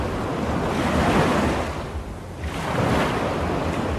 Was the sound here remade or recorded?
recorded